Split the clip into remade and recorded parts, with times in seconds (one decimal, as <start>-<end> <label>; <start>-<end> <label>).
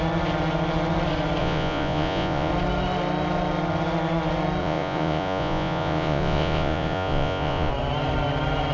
0.0-1.4 recorded; 1.4-2.5 remade; 2.5-4.6 recorded; 4.6-7.7 remade; 7.7-8.7 recorded